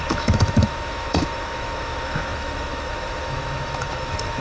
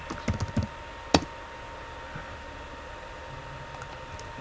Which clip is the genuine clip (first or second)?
second